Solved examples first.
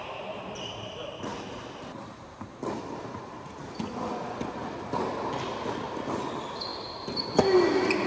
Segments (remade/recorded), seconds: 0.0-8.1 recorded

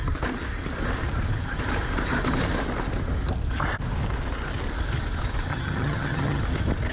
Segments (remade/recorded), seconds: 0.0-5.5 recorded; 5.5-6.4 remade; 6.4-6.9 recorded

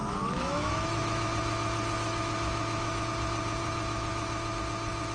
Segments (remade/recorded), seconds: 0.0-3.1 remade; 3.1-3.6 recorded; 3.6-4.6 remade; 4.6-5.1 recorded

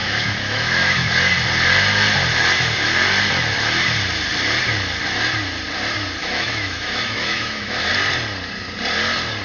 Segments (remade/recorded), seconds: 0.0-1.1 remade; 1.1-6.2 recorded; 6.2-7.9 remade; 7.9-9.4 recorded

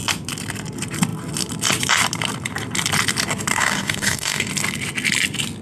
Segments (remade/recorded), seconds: 0.0-3.5 recorded; 3.5-4.5 remade; 4.5-5.6 recorded